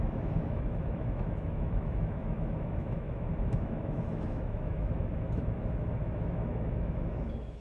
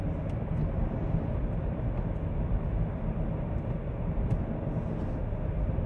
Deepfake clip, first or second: first